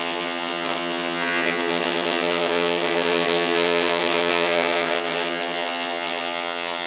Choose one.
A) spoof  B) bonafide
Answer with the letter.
A